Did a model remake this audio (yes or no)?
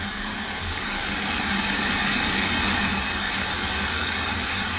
yes